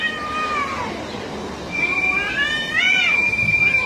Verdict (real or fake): fake